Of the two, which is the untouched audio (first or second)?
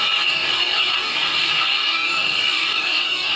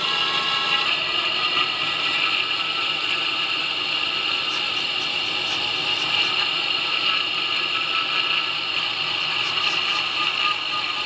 second